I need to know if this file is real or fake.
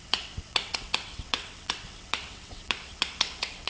fake